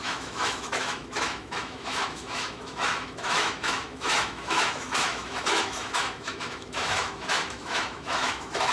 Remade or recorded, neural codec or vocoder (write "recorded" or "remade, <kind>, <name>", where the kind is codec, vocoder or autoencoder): remade, autoencoder, DAC-VAE